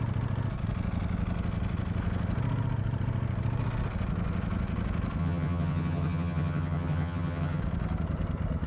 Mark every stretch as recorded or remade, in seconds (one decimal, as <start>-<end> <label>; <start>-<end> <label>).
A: 0.0-5.2 recorded; 5.2-7.6 remade; 7.6-8.7 recorded